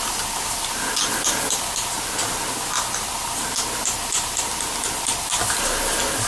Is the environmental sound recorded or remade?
recorded